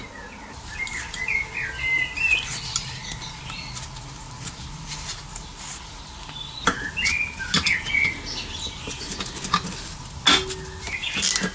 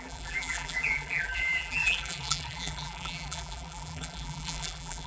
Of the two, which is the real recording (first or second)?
first